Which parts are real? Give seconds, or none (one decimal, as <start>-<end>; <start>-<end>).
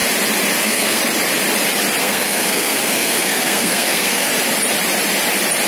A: 0.0-0.6; 1.0-2.0; 4.3-5.7